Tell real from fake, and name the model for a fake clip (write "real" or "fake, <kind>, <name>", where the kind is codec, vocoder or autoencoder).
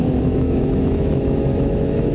fake, autoencoder, DAC-VAE